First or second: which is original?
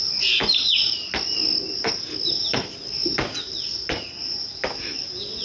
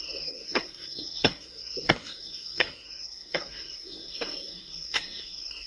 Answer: first